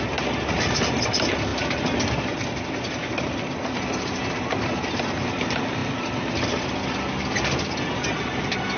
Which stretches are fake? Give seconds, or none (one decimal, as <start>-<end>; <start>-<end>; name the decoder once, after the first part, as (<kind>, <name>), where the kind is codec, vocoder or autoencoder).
none